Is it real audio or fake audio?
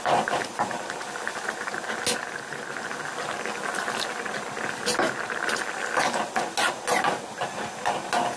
real